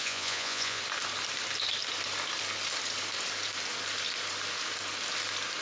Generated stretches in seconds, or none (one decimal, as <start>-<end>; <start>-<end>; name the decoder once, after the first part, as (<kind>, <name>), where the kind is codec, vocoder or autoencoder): 0.0-0.8 (vocoder, Vocos)